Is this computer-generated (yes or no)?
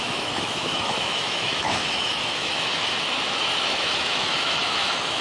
yes